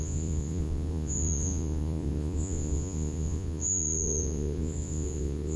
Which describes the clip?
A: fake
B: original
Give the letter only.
A